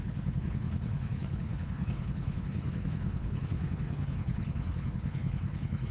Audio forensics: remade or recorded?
remade